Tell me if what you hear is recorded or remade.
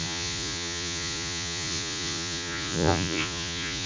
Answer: remade